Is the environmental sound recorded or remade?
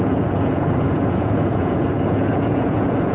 remade